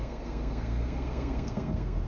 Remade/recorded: remade